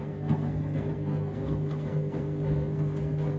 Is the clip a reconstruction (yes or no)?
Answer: yes